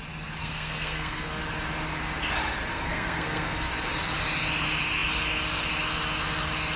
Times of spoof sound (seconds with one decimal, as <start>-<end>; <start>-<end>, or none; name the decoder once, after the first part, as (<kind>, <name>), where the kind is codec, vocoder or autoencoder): 0.4-1.4 (codec, SNAC); 2.7-3.7